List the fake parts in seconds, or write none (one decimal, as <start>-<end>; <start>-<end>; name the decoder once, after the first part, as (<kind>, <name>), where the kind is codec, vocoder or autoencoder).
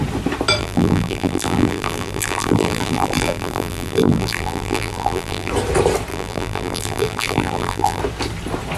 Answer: 0.6-5.5 (vocoder, BigVGAN v2); 6.1-8.0